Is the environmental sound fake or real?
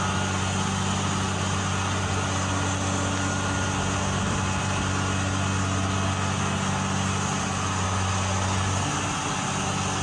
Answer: real